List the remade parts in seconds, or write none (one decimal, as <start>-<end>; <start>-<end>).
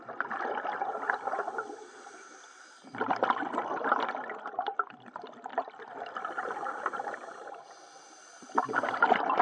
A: none